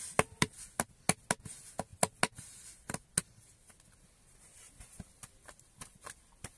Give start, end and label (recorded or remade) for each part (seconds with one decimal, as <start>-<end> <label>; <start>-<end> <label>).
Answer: 0.0-6.6 recorded